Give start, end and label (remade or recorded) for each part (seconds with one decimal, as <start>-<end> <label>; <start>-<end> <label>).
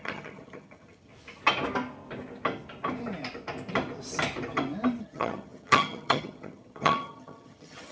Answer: 0.0-1.1 remade; 1.1-5.0 recorded; 5.0-7.9 remade